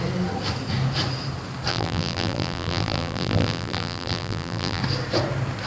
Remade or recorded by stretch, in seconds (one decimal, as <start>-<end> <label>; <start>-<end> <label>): 0.0-1.7 recorded; 1.7-4.8 remade; 4.8-5.7 recorded